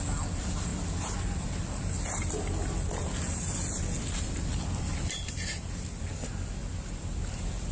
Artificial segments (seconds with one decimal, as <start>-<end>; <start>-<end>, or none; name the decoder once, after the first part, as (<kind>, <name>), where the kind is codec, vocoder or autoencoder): none